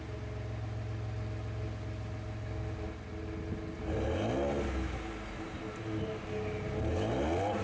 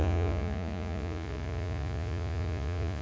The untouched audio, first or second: first